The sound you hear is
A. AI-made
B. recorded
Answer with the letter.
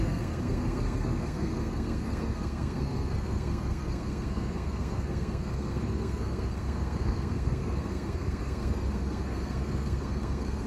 A